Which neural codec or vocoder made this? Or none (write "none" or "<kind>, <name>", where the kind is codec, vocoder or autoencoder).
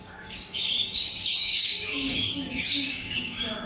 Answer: codec, DAC